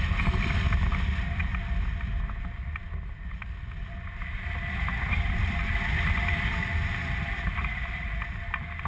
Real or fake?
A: real